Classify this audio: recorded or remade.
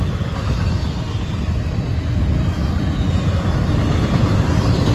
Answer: recorded